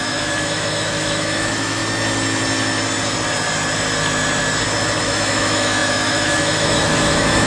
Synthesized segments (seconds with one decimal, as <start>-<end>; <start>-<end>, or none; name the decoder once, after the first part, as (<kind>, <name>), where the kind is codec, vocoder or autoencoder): 0.0-1.8 (autoencoder, DAC-VAE); 5.0-7.5

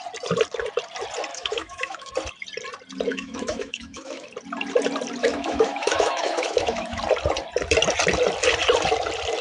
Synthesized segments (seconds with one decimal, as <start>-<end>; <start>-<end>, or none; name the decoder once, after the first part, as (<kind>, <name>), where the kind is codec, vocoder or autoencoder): 1.3-2.1 (autoencoder, DAC-VAE); 3.1-4.3; 5.2-7.0

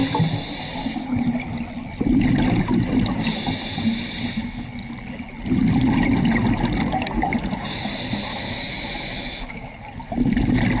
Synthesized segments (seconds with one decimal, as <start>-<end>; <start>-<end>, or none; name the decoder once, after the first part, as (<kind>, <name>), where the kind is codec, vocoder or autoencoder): 8.3-9.7 (autoencoder, DAC-VAE)

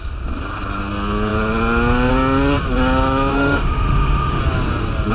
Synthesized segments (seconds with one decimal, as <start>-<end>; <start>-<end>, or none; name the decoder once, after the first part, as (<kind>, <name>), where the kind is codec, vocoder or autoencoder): 3.3-4.4 (autoencoder, DAC-VAE)

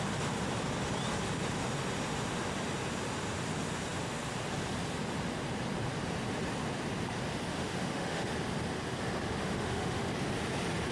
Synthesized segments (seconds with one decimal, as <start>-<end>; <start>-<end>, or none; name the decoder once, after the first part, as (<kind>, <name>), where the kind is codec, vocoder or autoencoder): 7.5-8.3 (autoencoder, DAC-VAE); 9.4-10.1

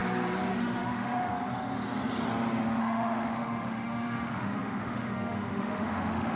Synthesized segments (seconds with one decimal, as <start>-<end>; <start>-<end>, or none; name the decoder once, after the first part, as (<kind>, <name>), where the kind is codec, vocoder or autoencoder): 0.5-1.3 (autoencoder, DAC-VAE); 2.8-6.4

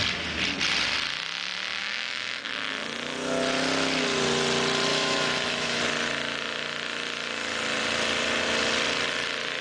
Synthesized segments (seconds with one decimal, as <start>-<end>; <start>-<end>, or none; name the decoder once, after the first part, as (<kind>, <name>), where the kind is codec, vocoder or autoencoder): 1.8-2.5 (autoencoder, DAC-VAE); 4.9-5.8